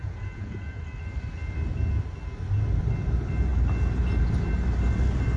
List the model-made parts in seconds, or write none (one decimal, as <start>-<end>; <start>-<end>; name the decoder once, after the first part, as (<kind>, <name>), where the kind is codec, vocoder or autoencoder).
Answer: 0.0-0.8 (vocoder, Vocos)